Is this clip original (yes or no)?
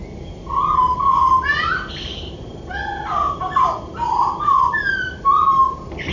yes